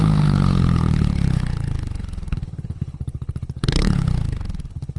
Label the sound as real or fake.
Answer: fake